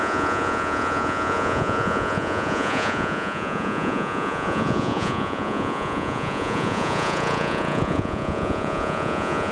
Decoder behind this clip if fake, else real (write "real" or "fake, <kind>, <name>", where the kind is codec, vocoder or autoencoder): fake, vocoder, Vocos